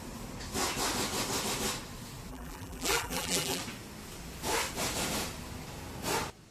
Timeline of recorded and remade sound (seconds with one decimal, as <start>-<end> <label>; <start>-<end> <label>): 0.0-2.3 recorded; 2.3-3.6 remade; 3.6-6.5 recorded